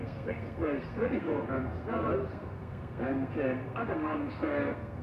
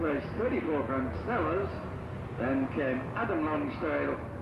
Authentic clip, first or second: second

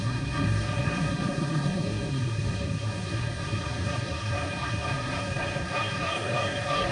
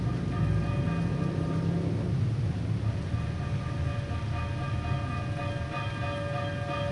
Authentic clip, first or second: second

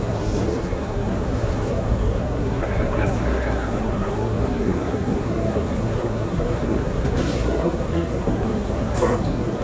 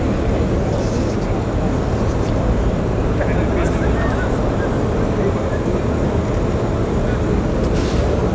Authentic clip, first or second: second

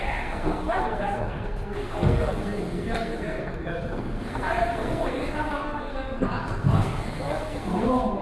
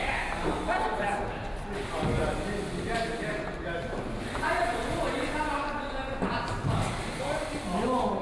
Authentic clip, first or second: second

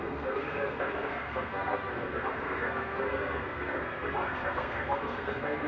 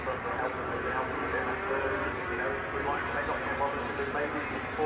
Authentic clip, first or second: second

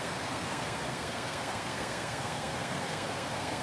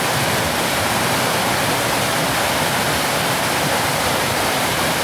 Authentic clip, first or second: second